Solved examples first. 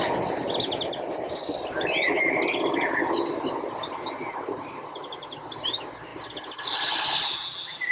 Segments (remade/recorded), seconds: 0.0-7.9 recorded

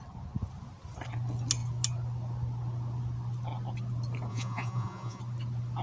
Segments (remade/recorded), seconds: 0.0-4.3 recorded; 4.3-5.2 remade; 5.2-5.8 recorded

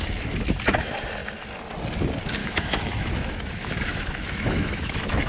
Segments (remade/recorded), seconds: 0.0-2.4 recorded; 2.4-5.3 remade

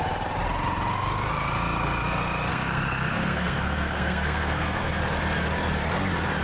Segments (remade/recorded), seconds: 0.0-2.5 recorded; 2.5-4.9 remade; 4.9-6.4 recorded